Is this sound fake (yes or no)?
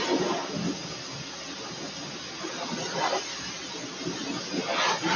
no